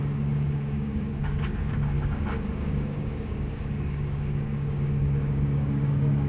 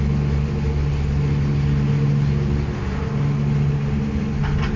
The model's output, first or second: first